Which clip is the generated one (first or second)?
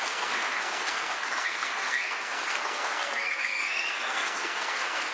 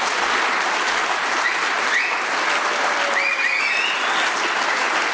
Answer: first